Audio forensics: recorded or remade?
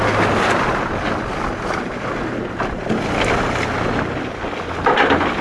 recorded